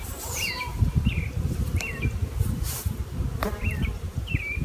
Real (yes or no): no